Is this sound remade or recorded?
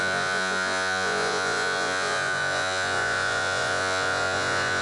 remade